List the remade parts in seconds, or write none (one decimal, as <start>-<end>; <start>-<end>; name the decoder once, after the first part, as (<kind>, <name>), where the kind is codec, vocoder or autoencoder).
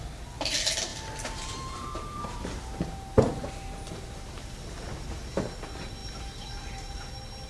0.9-5.4 (vocoder, BigVGAN v2); 6.0-7.1